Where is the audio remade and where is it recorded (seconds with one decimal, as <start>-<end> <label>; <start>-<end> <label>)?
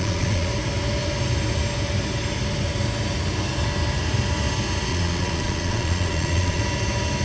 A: 0.0-0.5 remade; 0.5-4.9 recorded; 4.9-6.6 remade; 6.6-7.2 recorded